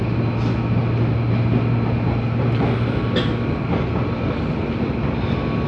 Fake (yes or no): no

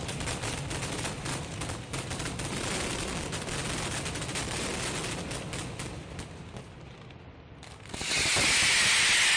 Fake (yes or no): no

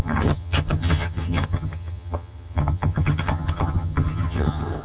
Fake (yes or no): yes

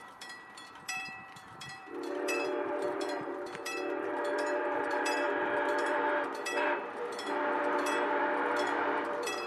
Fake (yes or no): yes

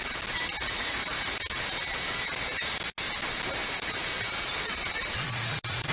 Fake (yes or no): no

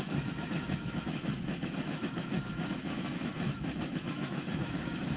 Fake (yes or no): yes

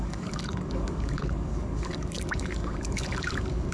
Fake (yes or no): yes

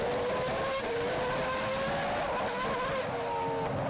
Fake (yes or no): no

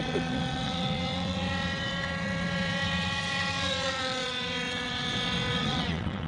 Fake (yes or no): yes